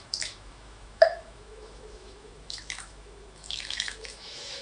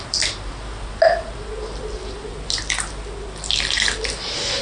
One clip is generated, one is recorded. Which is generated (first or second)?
first